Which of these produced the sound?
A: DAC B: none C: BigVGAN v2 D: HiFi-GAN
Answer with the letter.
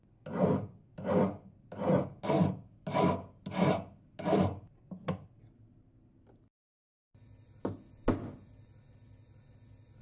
B